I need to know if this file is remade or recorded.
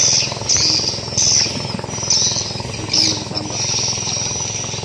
recorded